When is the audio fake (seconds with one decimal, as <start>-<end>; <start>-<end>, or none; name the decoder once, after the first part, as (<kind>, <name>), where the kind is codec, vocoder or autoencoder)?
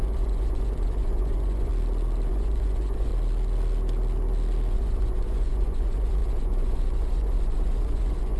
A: 0.0-1.7 (vocoder, Vocos); 2.3-3.1; 4.7-8.4